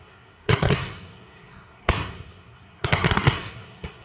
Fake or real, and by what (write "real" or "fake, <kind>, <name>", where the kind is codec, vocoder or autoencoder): fake, codec, SNAC